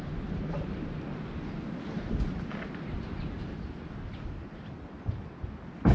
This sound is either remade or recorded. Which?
recorded